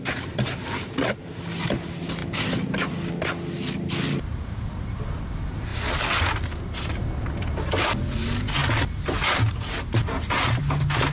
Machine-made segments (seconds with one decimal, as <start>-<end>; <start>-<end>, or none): none